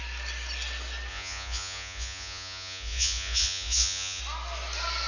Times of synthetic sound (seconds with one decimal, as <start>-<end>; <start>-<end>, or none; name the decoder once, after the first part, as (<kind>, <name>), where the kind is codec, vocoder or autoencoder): 1.1-4.2 (vocoder, Vocos)

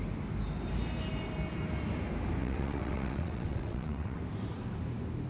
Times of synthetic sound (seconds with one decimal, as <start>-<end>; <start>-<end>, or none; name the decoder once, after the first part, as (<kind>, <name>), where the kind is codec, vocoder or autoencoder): 2.4-4.2 (vocoder, WaveNeXt)

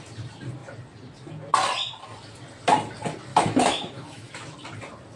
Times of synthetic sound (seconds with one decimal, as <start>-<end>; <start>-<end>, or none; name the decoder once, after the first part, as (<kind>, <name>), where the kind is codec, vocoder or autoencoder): 3.3-4.3 (autoencoder, DAC-VAE)

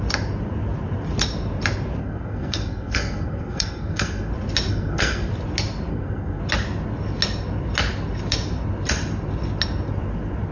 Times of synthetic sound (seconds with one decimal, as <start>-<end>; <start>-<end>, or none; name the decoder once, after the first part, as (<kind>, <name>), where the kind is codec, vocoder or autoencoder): 2.0-4.3 (codec, SNAC); 4.7-5.3; 5.9-6.4

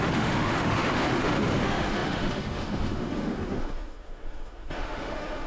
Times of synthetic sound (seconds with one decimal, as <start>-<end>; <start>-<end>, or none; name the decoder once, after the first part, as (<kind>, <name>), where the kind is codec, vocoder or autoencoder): 0.0-5.5 (autoencoder, DAC-VAE)

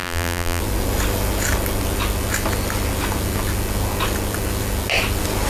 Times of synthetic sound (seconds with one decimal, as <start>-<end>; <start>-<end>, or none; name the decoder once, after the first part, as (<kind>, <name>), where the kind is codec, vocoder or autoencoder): 0.0-0.6 (vocoder, BigVGAN v2)